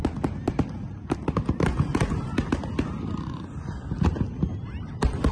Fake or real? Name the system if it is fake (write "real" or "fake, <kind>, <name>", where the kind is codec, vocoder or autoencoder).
real